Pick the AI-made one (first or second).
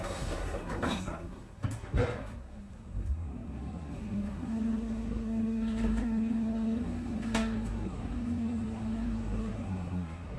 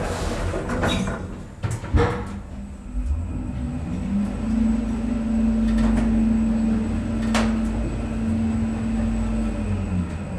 first